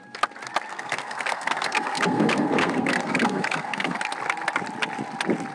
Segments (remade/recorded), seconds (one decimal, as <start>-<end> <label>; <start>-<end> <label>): 0.0-0.7 recorded; 0.7-4.0 remade; 4.0-5.5 recorded

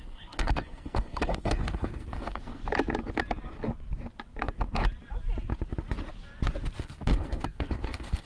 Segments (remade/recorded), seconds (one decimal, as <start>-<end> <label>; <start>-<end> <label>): 0.0-2.6 remade; 2.6-6.8 recorded; 6.8-8.3 remade

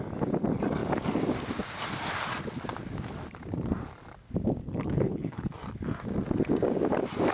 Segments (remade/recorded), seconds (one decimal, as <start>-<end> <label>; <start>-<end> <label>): 0.0-4.6 recorded; 4.6-5.5 remade; 5.5-7.3 recorded

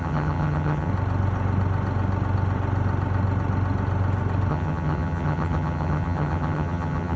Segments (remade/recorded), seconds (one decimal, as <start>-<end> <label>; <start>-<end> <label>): 0.0-0.9 remade; 0.9-4.5 recorded; 4.5-7.2 remade

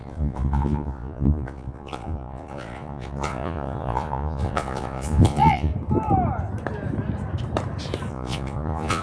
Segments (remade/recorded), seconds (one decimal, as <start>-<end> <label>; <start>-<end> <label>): 0.0-5.7 remade; 5.7-8.1 recorded; 8.1-9.0 remade